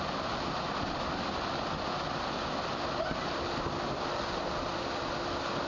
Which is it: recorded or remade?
recorded